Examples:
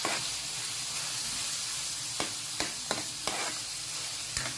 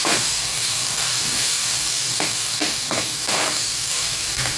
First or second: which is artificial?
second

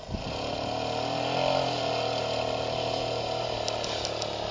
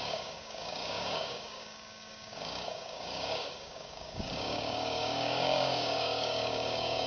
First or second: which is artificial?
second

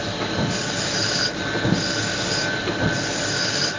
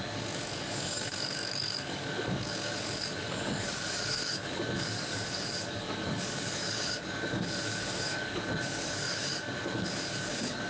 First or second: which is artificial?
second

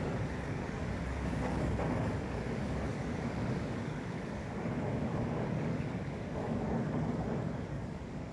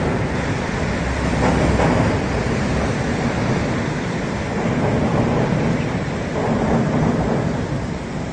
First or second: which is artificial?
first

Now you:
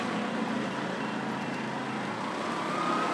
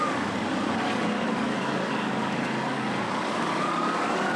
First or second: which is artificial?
second